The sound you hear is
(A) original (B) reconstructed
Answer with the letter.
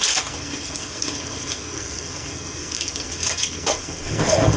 B